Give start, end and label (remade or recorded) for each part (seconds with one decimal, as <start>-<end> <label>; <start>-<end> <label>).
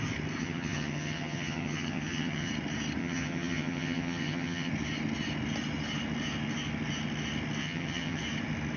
0.0-0.4 recorded; 0.4-2.5 remade; 2.5-3.0 recorded; 3.0-4.7 remade; 4.7-7.6 recorded; 7.6-8.2 remade; 8.2-8.8 recorded